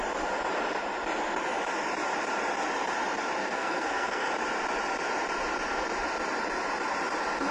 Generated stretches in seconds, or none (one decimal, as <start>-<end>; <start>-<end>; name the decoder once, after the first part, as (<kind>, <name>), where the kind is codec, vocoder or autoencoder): 3.4-4.3 (codec, SNAC)